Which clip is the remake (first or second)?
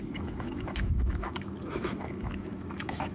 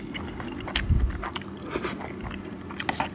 first